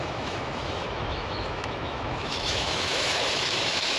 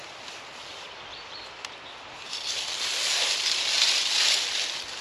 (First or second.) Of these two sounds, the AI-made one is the first